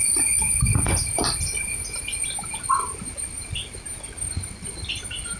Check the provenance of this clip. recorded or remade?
recorded